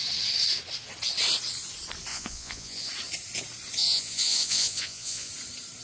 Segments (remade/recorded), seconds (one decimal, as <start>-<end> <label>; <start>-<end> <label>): 0.0-2.1 recorded; 2.1-2.9 remade; 2.9-3.8 recorded; 3.8-5.3 remade; 5.3-5.8 recorded